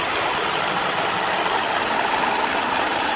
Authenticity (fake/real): real